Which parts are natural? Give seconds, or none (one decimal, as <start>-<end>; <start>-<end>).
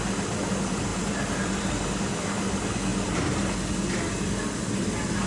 0.0-0.9; 2.0-2.9; 3.7-5.3